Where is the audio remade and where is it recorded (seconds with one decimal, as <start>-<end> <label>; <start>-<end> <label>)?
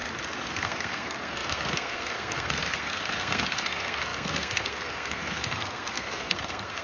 0.0-0.5 recorded; 0.5-6.8 remade